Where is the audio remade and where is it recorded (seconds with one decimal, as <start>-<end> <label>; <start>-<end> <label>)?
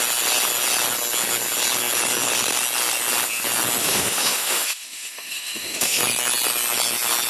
0.0-3.8 recorded; 3.8-6.0 remade; 6.0-7.3 recorded